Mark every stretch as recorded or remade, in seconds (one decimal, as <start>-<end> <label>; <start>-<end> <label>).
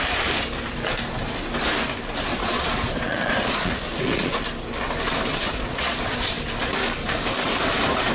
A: 0.0-2.3 recorded; 2.3-4.4 remade; 4.4-5.3 recorded; 5.3-6.3 remade; 6.3-8.1 recorded